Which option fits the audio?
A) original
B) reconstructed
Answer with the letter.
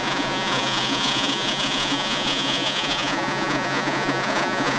B